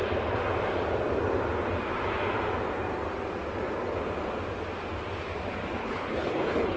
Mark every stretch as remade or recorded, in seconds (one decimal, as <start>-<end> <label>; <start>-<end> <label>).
0.0-5.8 recorded; 5.8-6.8 remade